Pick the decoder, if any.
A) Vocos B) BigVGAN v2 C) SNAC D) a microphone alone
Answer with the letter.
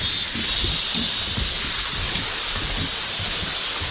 D